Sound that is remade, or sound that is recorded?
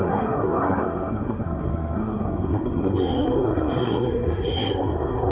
remade